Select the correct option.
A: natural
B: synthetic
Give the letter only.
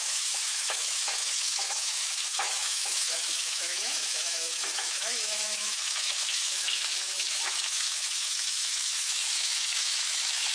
B